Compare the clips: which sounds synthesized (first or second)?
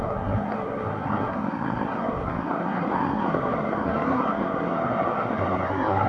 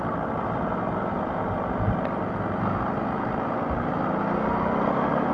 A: first